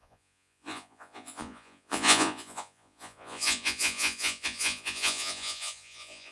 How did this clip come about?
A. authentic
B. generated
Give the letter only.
B